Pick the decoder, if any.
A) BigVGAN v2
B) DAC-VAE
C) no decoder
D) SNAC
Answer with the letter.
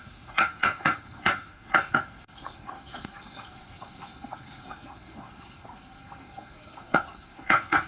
D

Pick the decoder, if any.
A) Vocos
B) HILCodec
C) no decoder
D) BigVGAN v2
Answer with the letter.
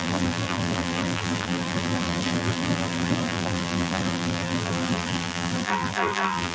D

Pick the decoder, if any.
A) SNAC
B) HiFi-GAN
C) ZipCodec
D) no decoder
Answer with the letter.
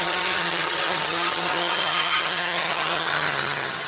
B